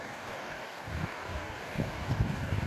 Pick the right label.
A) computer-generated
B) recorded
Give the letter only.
A